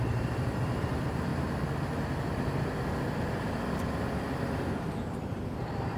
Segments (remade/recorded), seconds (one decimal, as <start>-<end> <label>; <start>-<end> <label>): 0.0-1.3 remade; 1.3-4.9 recorded; 4.9-6.0 remade